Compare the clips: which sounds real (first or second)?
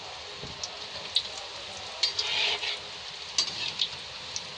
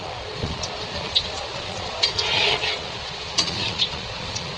first